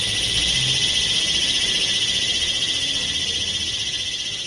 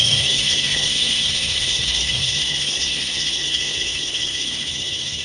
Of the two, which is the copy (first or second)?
second